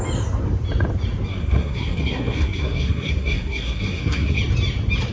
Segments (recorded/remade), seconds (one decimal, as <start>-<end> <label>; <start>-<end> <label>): 0.0-1.3 recorded; 1.3-4.4 remade; 4.4-5.1 recorded